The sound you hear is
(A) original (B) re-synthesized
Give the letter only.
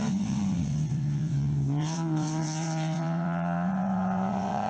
B